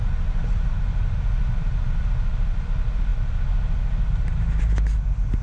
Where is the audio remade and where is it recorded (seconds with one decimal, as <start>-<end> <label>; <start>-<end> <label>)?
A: 0.0-5.4 recorded